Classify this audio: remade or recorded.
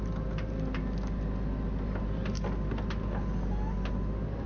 recorded